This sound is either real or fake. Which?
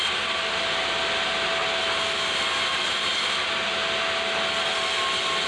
real